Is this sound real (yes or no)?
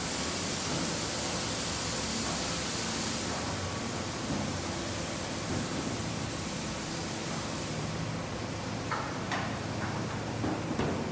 yes